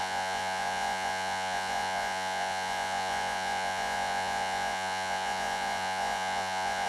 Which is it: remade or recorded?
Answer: remade